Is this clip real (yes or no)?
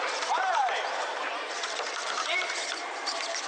no